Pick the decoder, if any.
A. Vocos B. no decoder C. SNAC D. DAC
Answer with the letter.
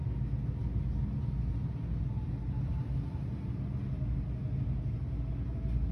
B